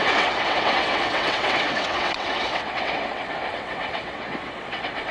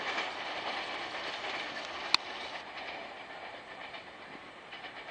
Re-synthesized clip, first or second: first